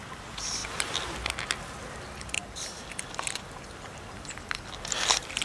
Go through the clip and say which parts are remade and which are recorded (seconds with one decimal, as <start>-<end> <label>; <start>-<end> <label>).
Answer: 0.0-0.6 remade; 0.6-1.6 recorded; 1.6-5.4 remade